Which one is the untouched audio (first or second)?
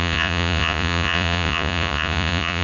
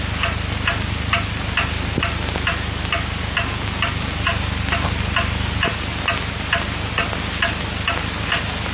second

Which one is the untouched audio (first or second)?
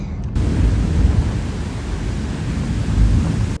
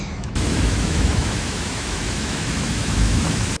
first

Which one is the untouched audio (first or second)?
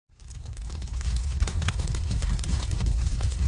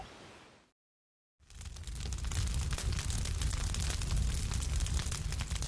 second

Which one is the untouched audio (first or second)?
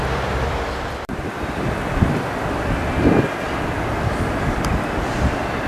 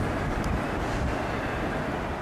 second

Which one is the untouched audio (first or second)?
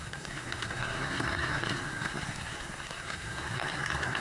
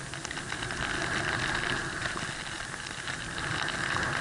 second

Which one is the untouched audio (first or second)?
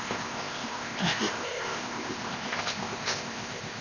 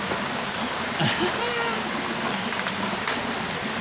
second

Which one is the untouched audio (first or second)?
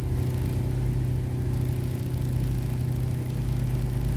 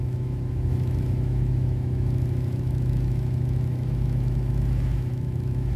first